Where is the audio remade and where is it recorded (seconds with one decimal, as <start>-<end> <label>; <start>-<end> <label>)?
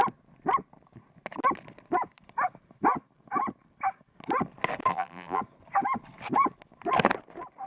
0.0-4.9 recorded; 4.9-5.4 remade; 5.4-7.7 recorded